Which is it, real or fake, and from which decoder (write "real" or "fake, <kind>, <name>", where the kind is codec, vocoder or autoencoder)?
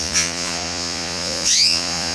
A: fake, vocoder, Vocos